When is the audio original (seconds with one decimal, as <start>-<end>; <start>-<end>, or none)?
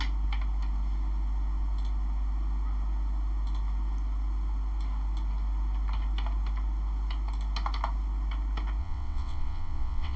0.0-8.8